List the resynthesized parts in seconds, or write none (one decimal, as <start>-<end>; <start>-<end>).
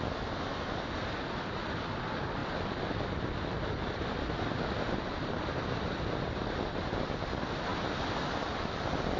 0.0-2.4; 3.9-7.7